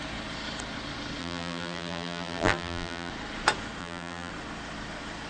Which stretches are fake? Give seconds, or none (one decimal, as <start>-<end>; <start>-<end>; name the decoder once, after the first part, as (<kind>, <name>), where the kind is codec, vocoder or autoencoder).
1.2-3.1 (vocoder, BigVGAN v2); 3.8-4.3